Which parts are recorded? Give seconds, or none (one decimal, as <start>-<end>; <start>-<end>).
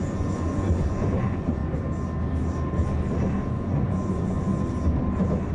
1.6-3.5; 4.5-5.5